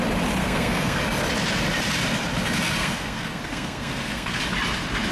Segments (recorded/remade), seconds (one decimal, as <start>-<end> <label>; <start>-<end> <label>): 0.0-0.4 recorded; 0.4-1.0 remade; 1.0-2.8 recorded; 2.8-4.4 remade; 4.4-5.1 recorded